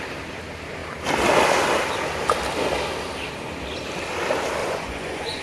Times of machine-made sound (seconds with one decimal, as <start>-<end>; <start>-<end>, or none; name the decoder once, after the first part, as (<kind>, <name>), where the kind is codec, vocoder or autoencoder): 4.6-5.4 (vocoder, Vocos)